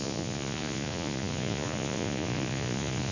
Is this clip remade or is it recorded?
remade